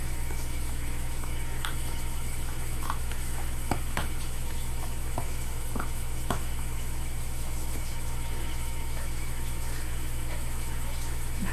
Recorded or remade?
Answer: remade